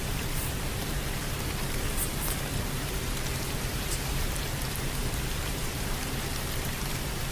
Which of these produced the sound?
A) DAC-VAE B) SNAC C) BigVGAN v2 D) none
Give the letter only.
C